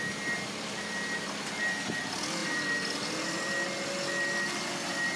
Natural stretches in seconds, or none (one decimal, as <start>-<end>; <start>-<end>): 0.0-5.2